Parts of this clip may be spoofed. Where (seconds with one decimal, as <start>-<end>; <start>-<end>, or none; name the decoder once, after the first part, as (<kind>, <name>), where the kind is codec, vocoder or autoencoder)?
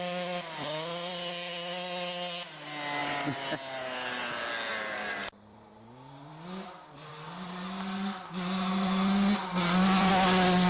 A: 4.7-7.1 (vocoder, BigVGAN v2); 9.4-10.1